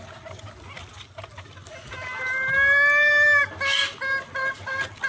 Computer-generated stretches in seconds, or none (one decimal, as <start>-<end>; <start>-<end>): none